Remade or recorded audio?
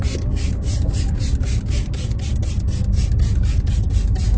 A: recorded